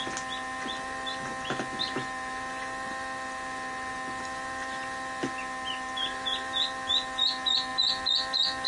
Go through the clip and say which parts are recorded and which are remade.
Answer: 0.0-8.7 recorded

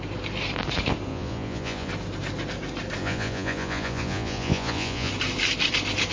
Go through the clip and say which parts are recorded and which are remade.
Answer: 0.0-1.1 recorded; 1.1-1.9 remade; 1.9-3.0 recorded; 3.0-5.1 remade; 5.1-6.1 recorded

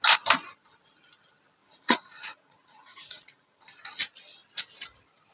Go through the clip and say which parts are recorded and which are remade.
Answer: 0.0-1.6 recorded; 1.6-3.6 remade; 3.6-5.3 recorded

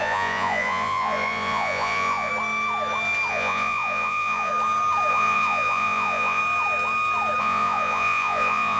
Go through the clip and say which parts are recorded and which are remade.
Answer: 0.0-2.3 remade; 2.3-3.3 recorded; 3.3-4.5 remade; 4.5-5.1 recorded; 5.1-6.4 remade; 6.4-7.4 recorded; 7.4-8.8 remade

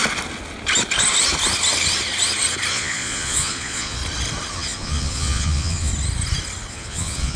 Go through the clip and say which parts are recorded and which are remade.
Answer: 0.0-2.7 recorded; 2.7-4.0 remade; 4.0-4.5 recorded; 4.5-5.9 remade; 5.9-6.7 recorded; 6.7-7.4 remade

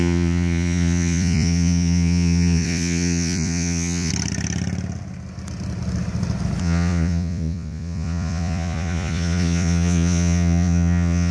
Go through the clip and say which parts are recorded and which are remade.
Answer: 0.0-4.1 remade; 4.1-6.6 recorded; 6.6-11.3 remade

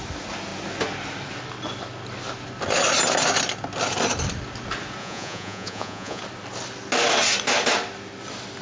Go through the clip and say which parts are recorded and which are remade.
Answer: 0.0-5.0 recorded; 5.0-6.2 remade; 6.2-8.6 recorded

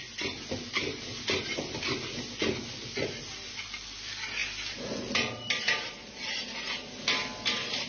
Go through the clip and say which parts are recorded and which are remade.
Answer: 0.0-7.9 recorded